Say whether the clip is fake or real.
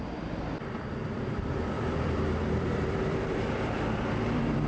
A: fake